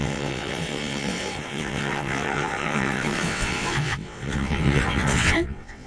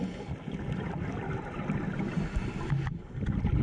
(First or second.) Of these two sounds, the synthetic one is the first